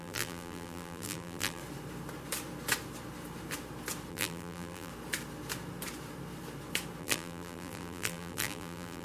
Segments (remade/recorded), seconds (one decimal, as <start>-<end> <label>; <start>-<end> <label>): 0.0-1.6 remade; 1.6-4.1 recorded; 4.1-4.9 remade; 4.9-7.0 recorded; 7.0-9.0 remade

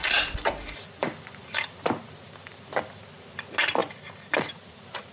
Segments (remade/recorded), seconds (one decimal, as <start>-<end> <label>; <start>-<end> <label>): 0.0-3.0 remade; 3.0-3.8 recorded; 3.8-5.1 remade

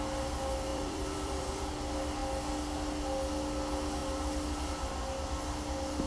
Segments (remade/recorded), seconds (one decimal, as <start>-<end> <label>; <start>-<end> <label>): 0.0-0.7 recorded; 0.7-1.7 remade; 1.7-6.1 recorded

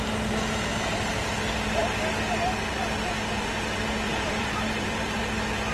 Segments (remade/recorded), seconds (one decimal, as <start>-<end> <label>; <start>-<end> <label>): 0.0-4.1 recorded; 4.1-5.2 remade; 5.2-5.7 recorded

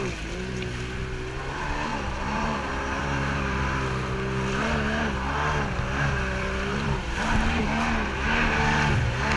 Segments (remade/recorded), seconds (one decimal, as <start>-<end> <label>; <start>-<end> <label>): 0.0-1.9 recorded; 1.9-3.0 remade; 3.0-6.7 recorded; 6.7-7.6 remade; 7.6-9.4 recorded